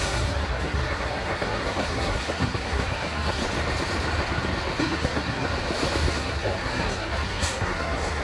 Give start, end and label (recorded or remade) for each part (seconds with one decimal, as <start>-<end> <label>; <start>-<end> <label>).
0.0-3.4 remade; 3.4-4.8 recorded; 4.8-5.5 remade; 5.5-6.1 recorded; 6.1-8.2 remade

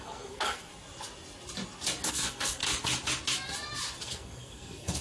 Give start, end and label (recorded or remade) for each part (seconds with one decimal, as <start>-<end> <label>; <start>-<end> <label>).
0.0-0.7 remade; 0.7-2.1 recorded; 2.1-2.6 remade; 2.6-4.0 recorded; 4.0-5.0 remade

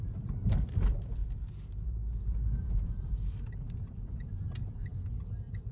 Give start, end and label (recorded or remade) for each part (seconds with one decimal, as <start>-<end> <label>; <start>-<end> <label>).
0.0-1.2 recorded; 1.2-4.4 remade; 4.4-5.7 recorded

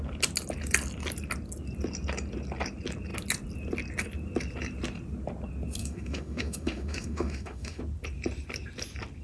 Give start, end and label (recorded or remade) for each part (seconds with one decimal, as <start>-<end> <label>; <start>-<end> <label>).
0.0-5.8 recorded; 5.8-7.8 remade; 7.8-9.2 recorded

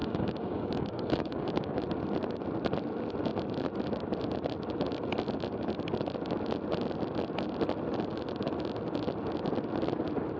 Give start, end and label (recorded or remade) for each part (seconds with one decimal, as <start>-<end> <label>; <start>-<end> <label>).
0.0-1.8 remade; 1.8-10.4 recorded

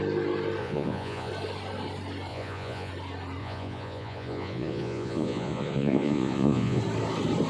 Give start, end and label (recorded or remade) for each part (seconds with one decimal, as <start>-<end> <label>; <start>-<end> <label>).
0.0-0.6 recorded; 0.6-1.3 remade; 1.3-2.3 recorded; 2.3-2.9 remade; 2.9-3.4 recorded; 3.4-6.8 remade; 6.8-7.5 recorded

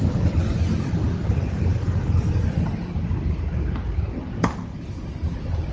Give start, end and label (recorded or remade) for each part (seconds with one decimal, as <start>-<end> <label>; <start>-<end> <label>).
0.0-5.7 recorded